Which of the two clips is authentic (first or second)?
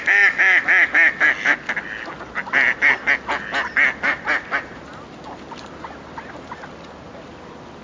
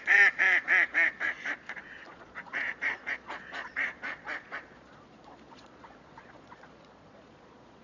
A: first